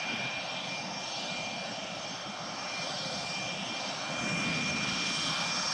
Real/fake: real